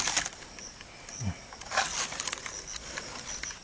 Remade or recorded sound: recorded